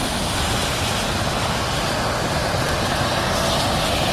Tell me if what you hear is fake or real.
real